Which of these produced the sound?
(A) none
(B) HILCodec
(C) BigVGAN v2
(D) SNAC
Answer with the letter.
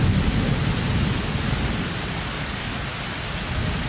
A